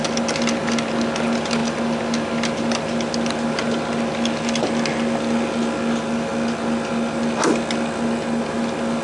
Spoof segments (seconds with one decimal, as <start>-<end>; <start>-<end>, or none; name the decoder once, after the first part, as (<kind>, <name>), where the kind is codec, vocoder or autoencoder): none